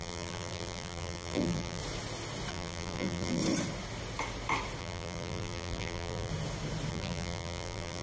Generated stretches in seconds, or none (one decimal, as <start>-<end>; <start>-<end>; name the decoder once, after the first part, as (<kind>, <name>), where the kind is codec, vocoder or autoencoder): 0.0-1.8 (vocoder, BigVGAN v2); 2.5-3.4; 4.8-6.3; 6.9-8.0